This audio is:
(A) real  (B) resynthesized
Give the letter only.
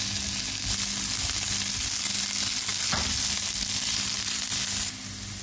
A